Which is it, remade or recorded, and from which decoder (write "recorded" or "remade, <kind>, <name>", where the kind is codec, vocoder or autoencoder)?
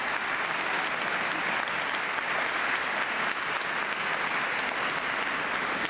recorded